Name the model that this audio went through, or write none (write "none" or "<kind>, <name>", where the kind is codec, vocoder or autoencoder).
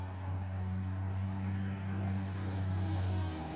codec, DAC